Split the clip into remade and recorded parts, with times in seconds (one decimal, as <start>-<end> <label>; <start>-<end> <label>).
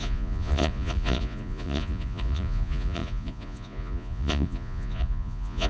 0.0-5.7 remade